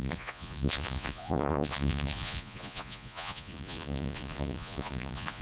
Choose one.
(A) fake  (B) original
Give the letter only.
A